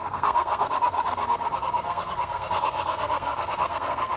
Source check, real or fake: fake